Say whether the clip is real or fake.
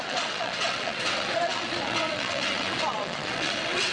fake